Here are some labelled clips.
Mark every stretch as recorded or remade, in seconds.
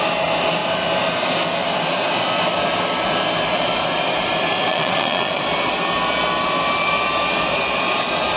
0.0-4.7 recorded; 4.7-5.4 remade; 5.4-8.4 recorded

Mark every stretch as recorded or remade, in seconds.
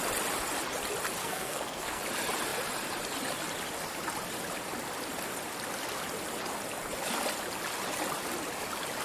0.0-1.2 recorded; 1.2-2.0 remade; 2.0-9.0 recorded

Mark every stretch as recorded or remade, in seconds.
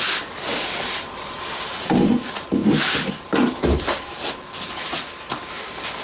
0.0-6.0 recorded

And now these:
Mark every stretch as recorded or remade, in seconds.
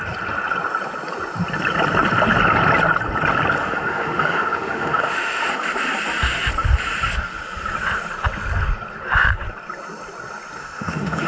0.0-3.6 recorded; 3.6-5.5 remade; 5.5-10.6 recorded; 10.6-11.3 remade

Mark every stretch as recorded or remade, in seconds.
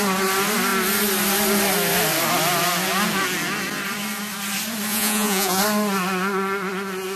0.0-4.9 recorded; 4.9-5.6 remade; 5.6-7.2 recorded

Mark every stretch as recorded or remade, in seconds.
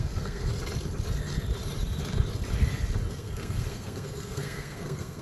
0.0-0.5 remade; 0.5-3.1 recorded; 3.1-5.2 remade